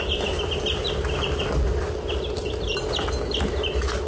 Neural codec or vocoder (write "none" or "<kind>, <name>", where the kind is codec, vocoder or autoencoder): none